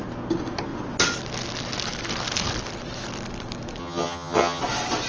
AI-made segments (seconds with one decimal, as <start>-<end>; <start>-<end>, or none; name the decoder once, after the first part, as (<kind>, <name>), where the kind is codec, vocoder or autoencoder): 3.8-4.6 (vocoder, HiFi-GAN)